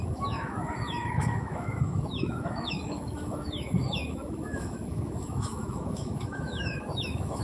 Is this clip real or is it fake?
fake